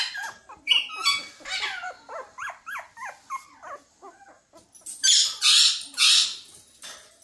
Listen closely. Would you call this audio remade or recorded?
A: recorded